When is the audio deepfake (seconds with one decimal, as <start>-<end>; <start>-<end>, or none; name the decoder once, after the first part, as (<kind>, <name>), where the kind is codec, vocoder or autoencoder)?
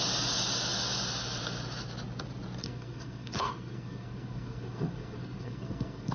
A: 2.6-6.1 (codec, SNAC)